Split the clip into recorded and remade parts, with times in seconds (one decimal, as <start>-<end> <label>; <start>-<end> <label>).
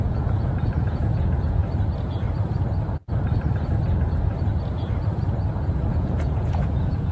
0.0-1.6 remade; 1.6-5.9 recorded; 5.9-7.1 remade